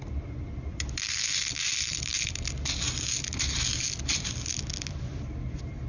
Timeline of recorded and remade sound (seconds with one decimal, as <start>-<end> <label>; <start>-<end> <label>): 0.0-0.6 recorded; 0.6-2.1 remade; 2.1-5.9 recorded